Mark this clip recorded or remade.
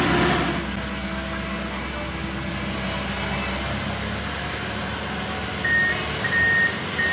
recorded